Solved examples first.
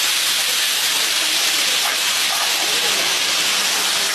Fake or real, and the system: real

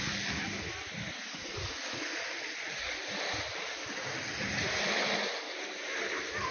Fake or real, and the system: real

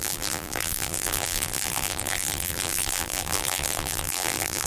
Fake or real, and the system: fake, vocoder, BigVGAN v2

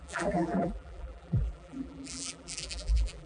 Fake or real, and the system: fake, vocoder, BigVGAN v2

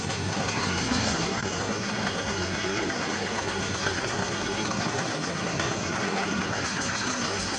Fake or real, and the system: fake, codec, SNAC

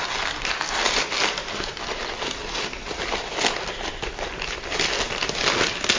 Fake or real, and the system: real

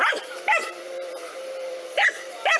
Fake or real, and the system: fake, vocoder, BigVGAN v2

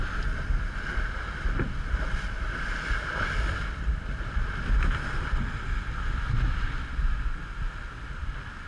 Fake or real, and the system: real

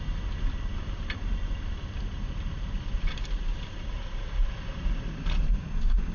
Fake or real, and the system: real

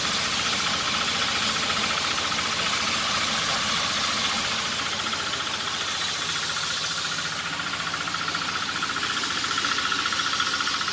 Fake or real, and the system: real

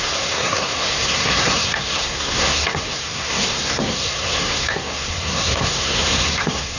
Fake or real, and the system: fake, codec, SNAC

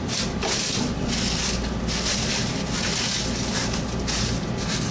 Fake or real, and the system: real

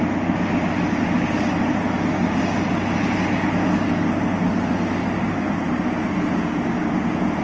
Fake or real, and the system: real